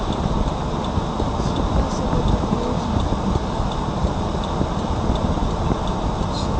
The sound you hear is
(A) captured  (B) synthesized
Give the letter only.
A